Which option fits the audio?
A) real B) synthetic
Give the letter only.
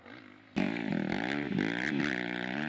A